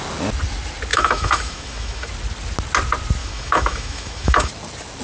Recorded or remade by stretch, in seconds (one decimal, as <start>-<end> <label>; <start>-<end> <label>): 0.0-0.9 recorded; 0.9-2.1 remade; 2.1-3.2 recorded; 3.2-4.5 remade; 4.5-5.0 recorded